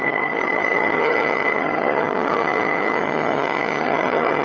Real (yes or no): no